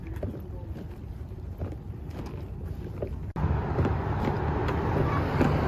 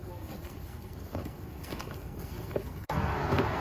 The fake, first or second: second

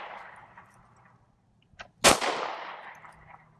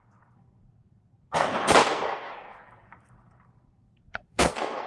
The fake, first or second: second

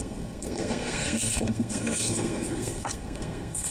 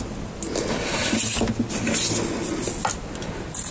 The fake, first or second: first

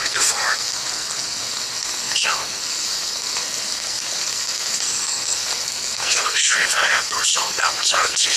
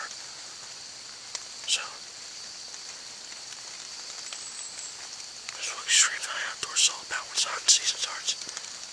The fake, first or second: first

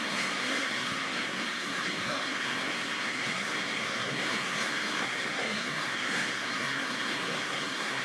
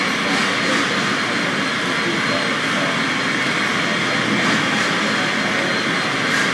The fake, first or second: first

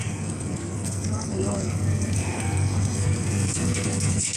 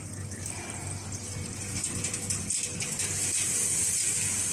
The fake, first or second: first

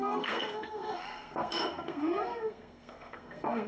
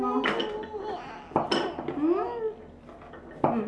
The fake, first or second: first